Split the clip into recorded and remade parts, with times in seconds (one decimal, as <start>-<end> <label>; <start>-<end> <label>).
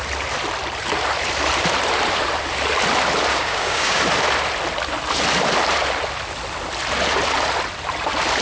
0.0-3.3 recorded; 3.3-4.0 remade; 4.0-8.4 recorded